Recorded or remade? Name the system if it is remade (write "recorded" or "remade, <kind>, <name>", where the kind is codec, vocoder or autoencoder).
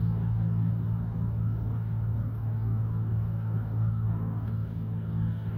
remade, codec, DAC